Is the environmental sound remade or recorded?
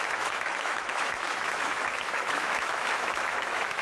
remade